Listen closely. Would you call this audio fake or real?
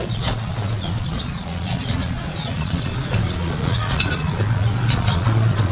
fake